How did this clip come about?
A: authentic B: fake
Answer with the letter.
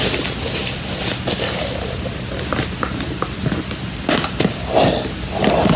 A